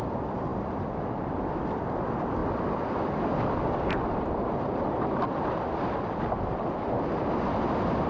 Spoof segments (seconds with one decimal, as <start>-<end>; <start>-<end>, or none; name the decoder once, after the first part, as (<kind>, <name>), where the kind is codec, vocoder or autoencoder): none